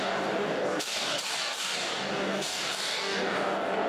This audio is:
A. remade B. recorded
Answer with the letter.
A